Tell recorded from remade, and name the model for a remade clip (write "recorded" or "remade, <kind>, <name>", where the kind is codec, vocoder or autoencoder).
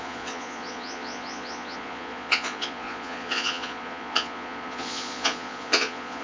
remade, vocoder, Vocos